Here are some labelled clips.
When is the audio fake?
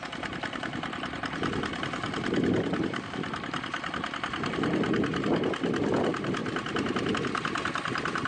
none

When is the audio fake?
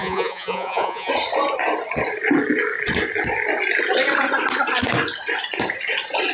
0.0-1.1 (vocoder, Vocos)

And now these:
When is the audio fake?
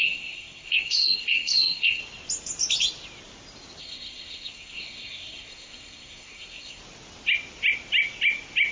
0.0-2.0 (codec, SNAC); 3.8-6.8